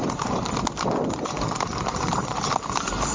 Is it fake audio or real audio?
real